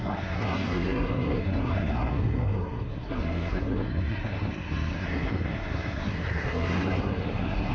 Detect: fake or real fake